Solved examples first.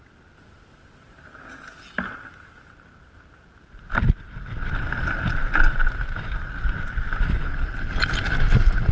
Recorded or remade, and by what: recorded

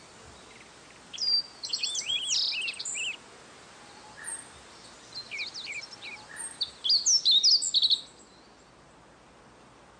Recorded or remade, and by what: recorded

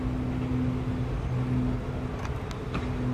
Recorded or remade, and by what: recorded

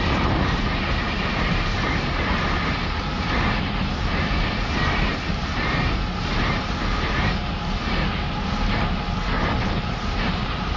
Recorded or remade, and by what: recorded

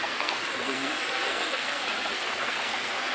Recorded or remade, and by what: remade, codec, SNAC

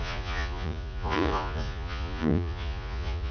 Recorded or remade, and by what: remade, vocoder, Vocos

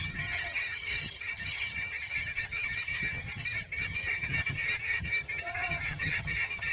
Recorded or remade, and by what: remade, vocoder, HiFi-GAN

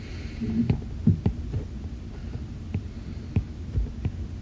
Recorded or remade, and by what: recorded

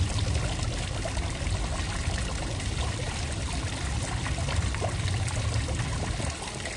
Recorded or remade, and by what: recorded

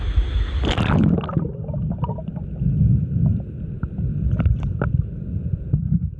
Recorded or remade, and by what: recorded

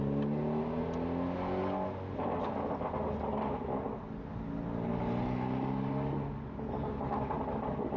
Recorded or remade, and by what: recorded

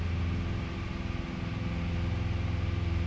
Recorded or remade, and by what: recorded